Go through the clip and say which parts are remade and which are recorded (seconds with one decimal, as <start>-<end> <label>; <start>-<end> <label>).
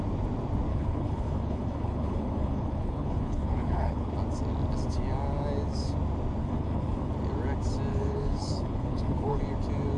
0.0-0.7 recorded; 0.7-4.1 remade; 4.1-6.4 recorded; 6.4-7.1 remade; 7.1-7.9 recorded; 7.9-9.4 remade; 9.4-10.0 recorded